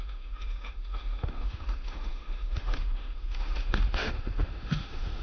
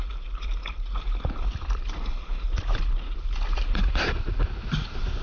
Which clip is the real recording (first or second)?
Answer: second